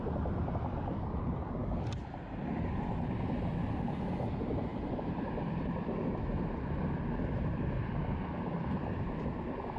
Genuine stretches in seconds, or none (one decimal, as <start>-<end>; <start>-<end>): 0.0-9.8